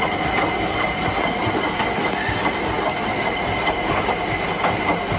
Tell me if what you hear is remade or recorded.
recorded